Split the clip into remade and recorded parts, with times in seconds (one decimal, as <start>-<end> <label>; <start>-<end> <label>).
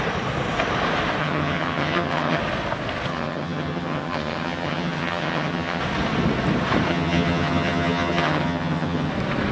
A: 0.0-1.2 recorded; 1.2-2.4 remade; 2.4-3.1 recorded; 3.1-5.8 remade; 5.8-6.9 recorded; 6.9-9.1 remade; 9.1-9.5 recorded